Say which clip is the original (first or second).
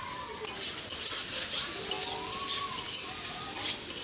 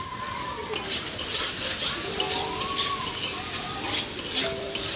first